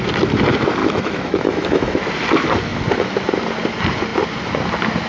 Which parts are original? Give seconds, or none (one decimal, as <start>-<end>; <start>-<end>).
0.0-0.8; 2.0-5.1